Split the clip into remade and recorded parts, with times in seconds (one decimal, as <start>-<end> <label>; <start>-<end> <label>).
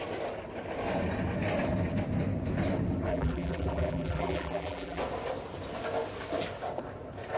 0.0-3.1 recorded; 3.1-5.0 remade; 5.0-7.4 recorded